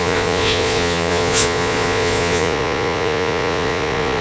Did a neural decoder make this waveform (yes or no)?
yes